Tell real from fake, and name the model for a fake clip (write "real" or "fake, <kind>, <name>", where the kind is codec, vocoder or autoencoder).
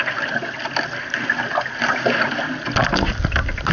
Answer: real